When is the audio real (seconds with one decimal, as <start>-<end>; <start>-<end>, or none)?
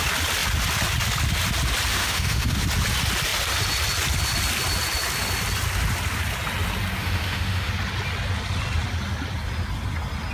0.0-1.9; 2.6-7.0; 7.7-10.3